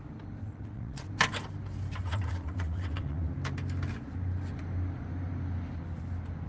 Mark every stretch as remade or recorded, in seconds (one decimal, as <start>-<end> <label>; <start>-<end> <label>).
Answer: 0.0-0.4 recorded; 0.4-1.1 remade; 1.1-2.0 recorded; 2.0-3.3 remade; 3.3-6.5 recorded